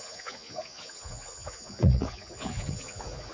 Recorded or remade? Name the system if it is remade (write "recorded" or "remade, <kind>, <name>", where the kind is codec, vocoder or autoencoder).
remade, vocoder, Vocos